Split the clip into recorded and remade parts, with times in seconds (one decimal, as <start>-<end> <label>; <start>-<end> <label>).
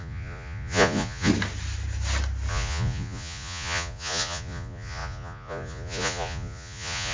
0.0-1.3 remade; 1.3-2.5 recorded; 2.5-7.1 remade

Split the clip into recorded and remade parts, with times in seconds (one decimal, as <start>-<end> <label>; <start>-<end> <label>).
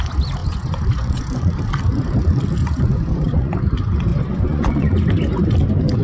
0.0-0.4 recorded; 0.4-1.6 remade; 1.6-2.6 recorded; 2.6-3.5 remade; 3.5-4.1 recorded; 4.1-5.0 remade; 5.0-6.0 recorded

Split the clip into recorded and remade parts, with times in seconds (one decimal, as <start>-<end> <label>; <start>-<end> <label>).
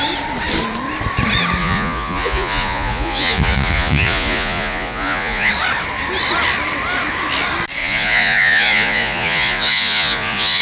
0.0-1.6 recorded; 1.6-5.5 remade; 5.5-7.8 recorded; 7.8-10.6 remade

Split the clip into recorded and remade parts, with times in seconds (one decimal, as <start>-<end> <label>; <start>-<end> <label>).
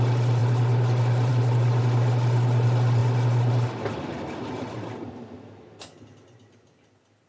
0.0-7.3 recorded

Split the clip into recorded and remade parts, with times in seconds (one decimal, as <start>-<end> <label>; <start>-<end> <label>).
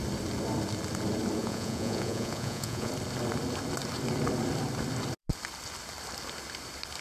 0.0-1.4 recorded; 1.4-2.9 remade; 2.9-7.0 recorded